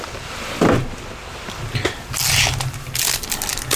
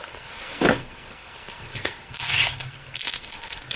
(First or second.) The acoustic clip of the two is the first